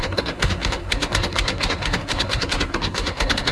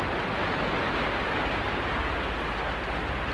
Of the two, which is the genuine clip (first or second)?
second